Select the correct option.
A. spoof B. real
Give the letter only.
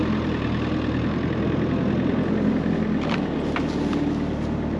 B